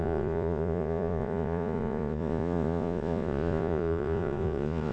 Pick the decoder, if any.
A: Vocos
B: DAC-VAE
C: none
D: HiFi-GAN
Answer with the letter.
A